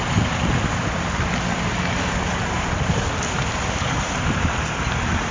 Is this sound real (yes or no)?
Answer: yes